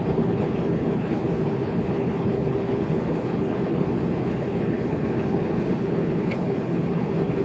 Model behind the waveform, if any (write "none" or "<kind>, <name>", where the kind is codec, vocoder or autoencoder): codec, HILCodec